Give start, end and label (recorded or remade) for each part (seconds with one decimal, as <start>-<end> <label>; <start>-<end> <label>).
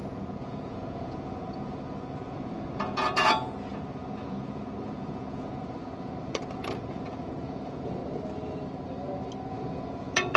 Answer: 0.0-8.0 remade; 8.0-9.5 recorded; 9.5-10.4 remade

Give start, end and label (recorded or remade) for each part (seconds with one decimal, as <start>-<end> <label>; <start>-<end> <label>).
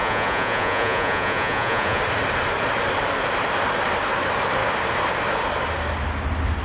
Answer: 0.0-2.0 remade; 2.0-6.6 recorded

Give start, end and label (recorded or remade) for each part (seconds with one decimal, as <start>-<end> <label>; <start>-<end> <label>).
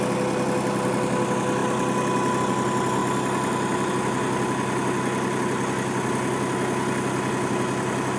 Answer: 0.0-8.2 recorded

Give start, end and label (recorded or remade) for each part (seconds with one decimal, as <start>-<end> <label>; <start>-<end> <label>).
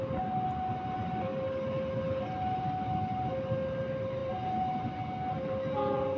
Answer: 0.0-6.2 recorded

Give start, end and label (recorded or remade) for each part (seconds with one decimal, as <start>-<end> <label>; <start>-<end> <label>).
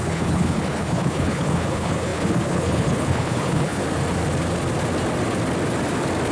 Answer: 0.0-3.8 remade; 3.8-6.3 recorded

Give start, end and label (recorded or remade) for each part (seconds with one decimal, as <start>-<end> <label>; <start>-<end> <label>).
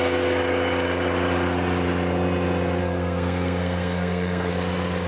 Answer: 0.0-2.8 recorded; 2.8-4.5 remade; 4.5-5.1 recorded